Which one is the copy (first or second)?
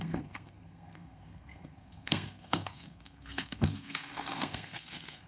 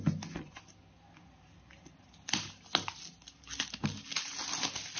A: first